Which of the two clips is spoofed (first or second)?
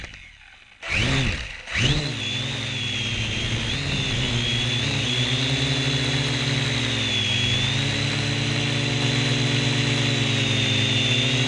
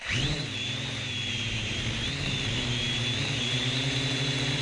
second